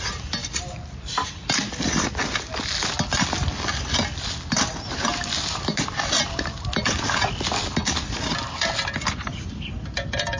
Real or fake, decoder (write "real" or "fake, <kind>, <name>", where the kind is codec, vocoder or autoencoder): real